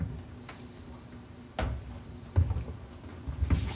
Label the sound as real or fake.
real